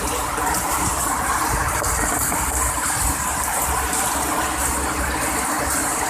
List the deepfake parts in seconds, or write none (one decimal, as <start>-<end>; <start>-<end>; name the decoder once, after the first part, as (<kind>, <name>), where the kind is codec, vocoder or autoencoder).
none